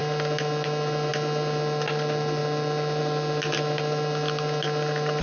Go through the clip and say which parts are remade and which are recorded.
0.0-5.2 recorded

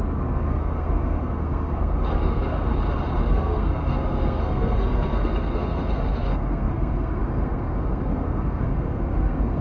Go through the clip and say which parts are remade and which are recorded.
0.0-2.7 remade; 2.7-3.3 recorded; 3.3-9.6 remade

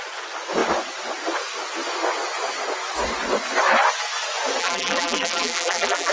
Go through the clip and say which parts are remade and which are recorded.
0.0-4.6 recorded; 4.6-6.1 remade

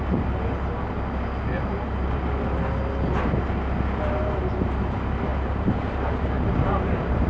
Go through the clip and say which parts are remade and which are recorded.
0.0-5.3 recorded; 5.3-6.1 remade; 6.1-7.3 recorded

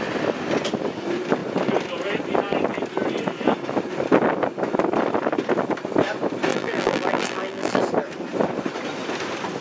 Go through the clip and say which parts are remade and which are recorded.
0.0-6.5 recorded; 6.5-7.8 remade; 7.8-9.6 recorded

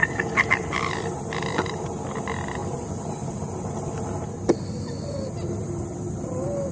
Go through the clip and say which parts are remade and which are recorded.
0.0-2.1 remade; 2.1-2.6 recorded; 2.6-6.7 remade